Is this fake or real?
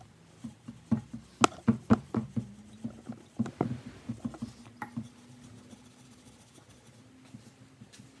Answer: real